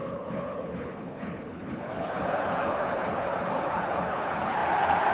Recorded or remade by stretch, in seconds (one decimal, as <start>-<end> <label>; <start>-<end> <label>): 0.0-5.1 remade